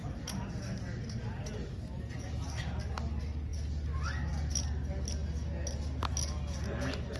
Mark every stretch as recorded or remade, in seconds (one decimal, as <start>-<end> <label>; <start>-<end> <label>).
0.0-7.2 recorded